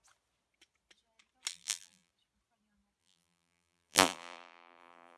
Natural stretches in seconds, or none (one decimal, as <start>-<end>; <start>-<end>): 0.0-1.5; 2.1-3.0